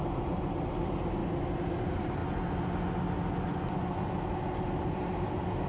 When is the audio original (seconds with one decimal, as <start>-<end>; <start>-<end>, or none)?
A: 1.2-1.8; 2.2-5.7